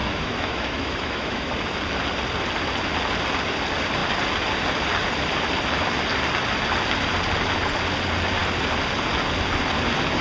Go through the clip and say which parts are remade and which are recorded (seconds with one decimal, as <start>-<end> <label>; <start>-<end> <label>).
0.0-1.5 remade; 1.5-10.2 recorded